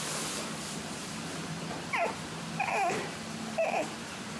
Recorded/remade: remade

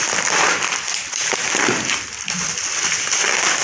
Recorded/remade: recorded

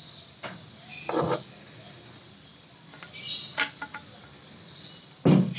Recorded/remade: remade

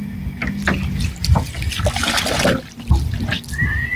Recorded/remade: recorded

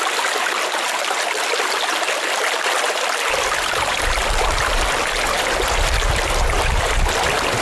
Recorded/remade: recorded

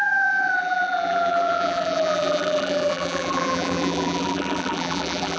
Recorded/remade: remade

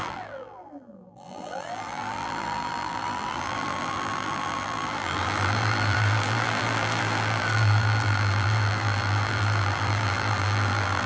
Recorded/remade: remade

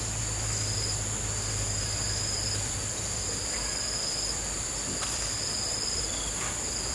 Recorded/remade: remade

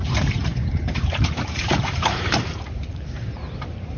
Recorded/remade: remade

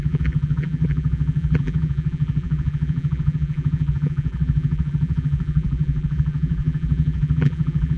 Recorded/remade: remade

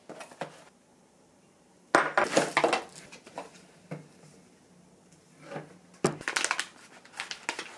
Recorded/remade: recorded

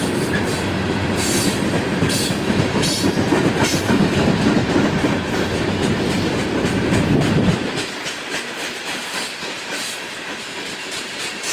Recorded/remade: remade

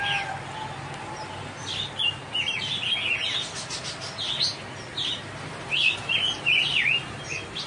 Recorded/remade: recorded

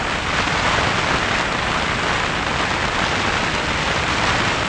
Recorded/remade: remade